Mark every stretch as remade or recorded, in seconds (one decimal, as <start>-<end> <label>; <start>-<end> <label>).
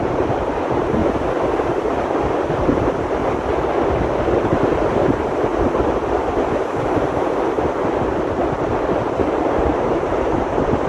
0.0-1.0 remade; 1.0-1.6 recorded; 1.6-3.2 remade; 3.2-4.4 recorded; 4.4-5.5 remade; 5.5-9.1 recorded; 9.1-10.9 remade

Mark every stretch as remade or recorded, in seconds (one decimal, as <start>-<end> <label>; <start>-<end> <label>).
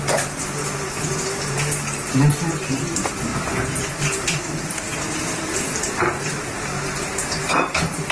0.0-2.3 remade; 2.3-2.9 recorded; 2.9-8.1 remade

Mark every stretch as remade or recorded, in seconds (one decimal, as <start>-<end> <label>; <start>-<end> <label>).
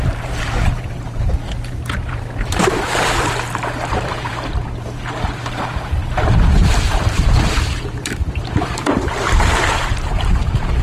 0.0-10.8 remade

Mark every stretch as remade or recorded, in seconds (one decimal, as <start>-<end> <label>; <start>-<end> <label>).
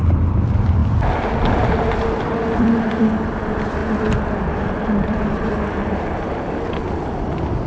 0.0-0.8 remade; 0.8-2.6 recorded; 2.6-7.7 remade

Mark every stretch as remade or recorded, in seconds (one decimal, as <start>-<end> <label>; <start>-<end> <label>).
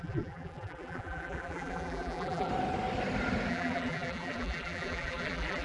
0.0-2.5 remade; 2.5-3.5 recorded; 3.5-5.6 remade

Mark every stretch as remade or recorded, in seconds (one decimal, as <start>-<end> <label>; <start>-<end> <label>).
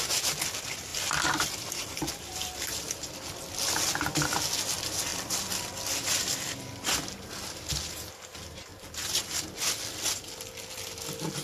0.0-0.9 recorded; 0.9-2.1 remade; 2.1-5.1 recorded; 5.1-6.0 remade; 6.0-8.7 recorded; 8.7-9.4 remade; 9.4-11.4 recorded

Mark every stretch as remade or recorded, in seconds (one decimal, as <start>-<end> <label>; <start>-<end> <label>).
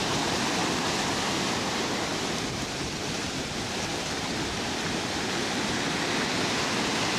0.0-0.6 recorded; 0.6-1.5 remade; 1.5-2.1 recorded; 2.1-3.5 remade; 3.5-3.9 recorded; 3.9-6.6 remade; 6.6-7.2 recorded